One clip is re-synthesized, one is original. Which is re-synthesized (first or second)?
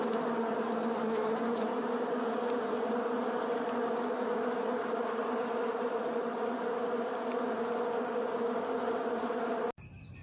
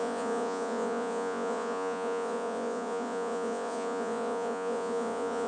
second